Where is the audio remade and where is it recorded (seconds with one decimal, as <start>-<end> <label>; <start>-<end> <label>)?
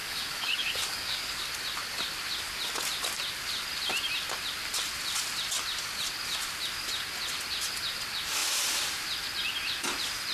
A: 0.0-1.5 remade; 1.5-10.3 recorded